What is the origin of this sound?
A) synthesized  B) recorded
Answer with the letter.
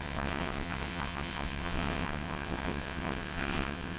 A